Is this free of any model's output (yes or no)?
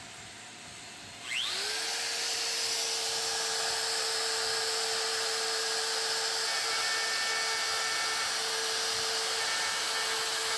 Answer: yes